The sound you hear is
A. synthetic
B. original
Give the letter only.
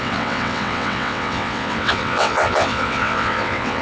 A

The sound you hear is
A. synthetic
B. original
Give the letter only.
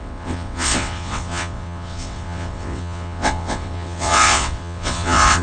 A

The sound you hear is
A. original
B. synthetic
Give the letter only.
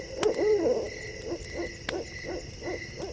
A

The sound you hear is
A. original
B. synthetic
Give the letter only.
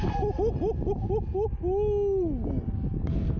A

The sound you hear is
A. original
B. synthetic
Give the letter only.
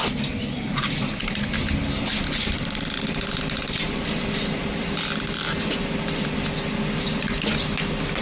A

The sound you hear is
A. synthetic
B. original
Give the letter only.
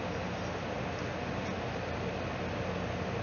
B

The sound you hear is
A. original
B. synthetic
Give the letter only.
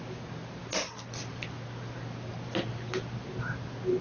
A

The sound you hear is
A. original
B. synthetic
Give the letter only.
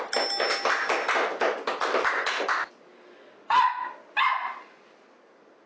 A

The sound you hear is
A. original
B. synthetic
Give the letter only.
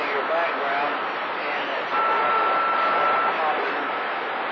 A